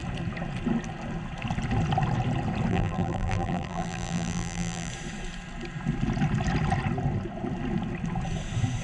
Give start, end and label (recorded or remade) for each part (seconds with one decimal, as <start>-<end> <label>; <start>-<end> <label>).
0.0-2.7 recorded; 2.7-4.9 remade; 4.9-8.8 recorded